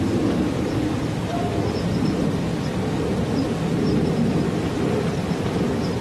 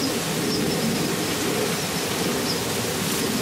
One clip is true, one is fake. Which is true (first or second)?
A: second